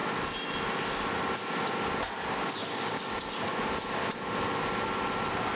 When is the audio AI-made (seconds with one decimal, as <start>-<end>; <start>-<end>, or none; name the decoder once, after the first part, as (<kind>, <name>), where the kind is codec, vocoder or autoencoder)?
none